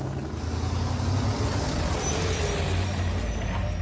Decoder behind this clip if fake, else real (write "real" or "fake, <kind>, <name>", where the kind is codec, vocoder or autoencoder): real